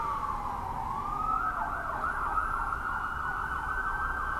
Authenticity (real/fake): real